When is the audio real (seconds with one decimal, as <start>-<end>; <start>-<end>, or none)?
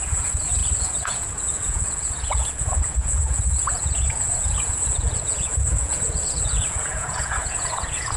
none